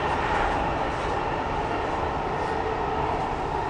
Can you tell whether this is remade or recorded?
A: recorded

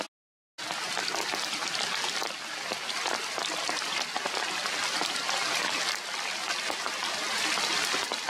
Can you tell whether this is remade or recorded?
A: recorded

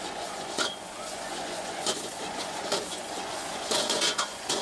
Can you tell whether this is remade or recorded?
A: remade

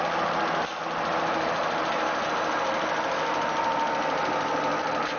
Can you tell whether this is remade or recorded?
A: recorded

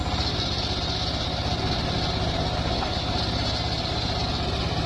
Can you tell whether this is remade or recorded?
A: recorded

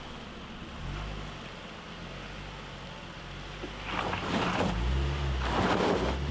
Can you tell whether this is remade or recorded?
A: recorded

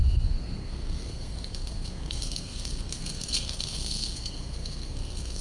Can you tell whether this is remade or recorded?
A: remade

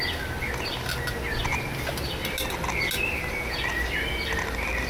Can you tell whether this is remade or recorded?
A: recorded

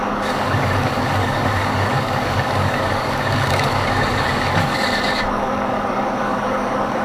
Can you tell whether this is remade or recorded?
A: remade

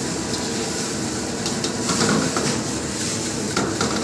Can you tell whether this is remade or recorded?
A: recorded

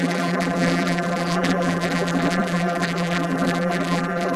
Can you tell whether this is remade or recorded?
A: remade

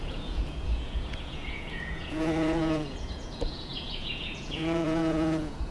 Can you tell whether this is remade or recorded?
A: remade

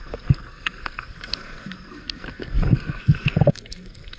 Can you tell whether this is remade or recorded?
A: remade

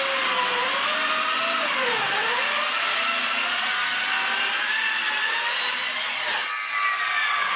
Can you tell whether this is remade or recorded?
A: recorded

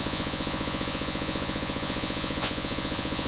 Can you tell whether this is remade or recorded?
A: remade